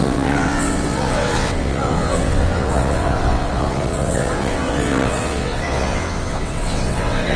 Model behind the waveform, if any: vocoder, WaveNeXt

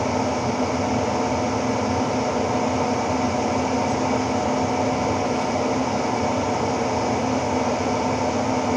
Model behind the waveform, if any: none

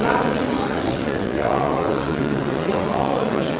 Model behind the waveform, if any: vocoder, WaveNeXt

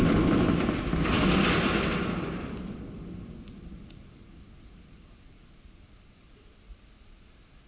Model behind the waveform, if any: none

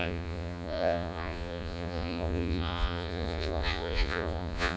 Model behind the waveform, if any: vocoder, Vocos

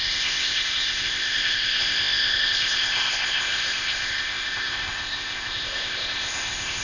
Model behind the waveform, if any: codec, ZipCodec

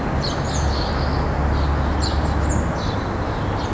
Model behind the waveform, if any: none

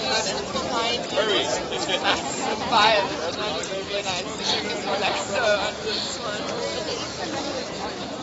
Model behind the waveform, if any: none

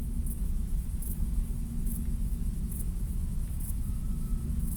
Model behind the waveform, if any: autoencoder, DAC-VAE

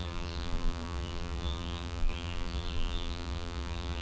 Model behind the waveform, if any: vocoder, BigVGAN v2